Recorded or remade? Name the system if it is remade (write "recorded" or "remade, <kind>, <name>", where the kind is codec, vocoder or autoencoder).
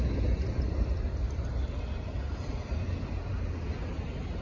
recorded